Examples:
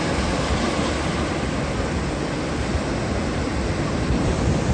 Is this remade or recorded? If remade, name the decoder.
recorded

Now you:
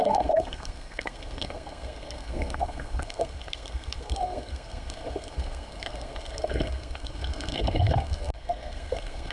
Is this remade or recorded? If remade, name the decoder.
remade, codec, SNAC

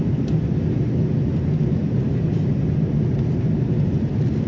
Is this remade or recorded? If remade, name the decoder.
recorded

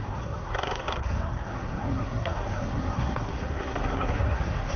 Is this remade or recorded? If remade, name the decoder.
remade, codec, SNAC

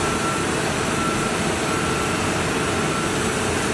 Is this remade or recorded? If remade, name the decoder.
recorded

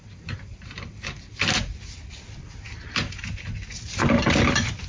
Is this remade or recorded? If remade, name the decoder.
recorded